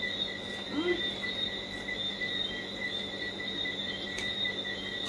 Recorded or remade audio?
recorded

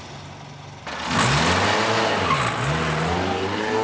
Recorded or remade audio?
recorded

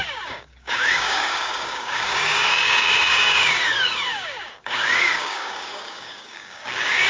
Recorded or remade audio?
remade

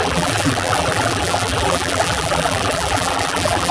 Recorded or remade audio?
remade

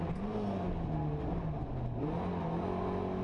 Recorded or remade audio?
recorded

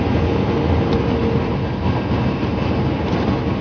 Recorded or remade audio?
recorded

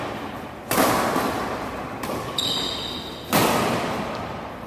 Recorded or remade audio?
recorded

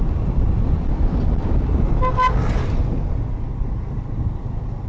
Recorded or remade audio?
recorded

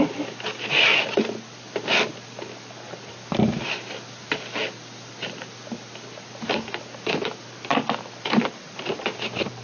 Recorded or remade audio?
recorded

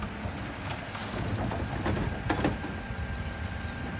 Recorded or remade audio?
recorded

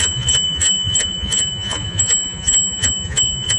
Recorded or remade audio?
remade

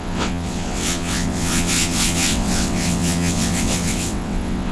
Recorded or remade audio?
remade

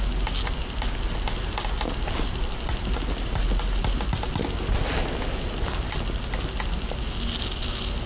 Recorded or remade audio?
recorded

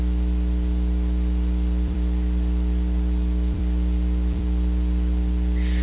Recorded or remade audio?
remade